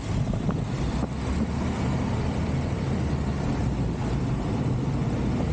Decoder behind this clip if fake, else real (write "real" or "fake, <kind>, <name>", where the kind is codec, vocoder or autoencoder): real